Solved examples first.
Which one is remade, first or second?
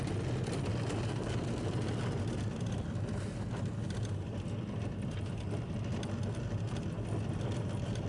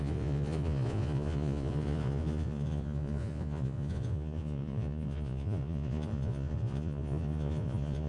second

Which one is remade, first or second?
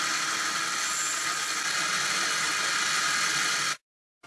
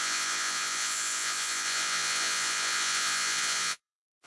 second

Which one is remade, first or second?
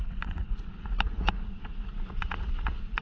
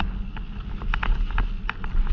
first